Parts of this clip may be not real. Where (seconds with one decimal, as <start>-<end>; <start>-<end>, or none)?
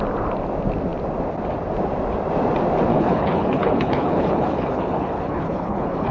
2.9-6.1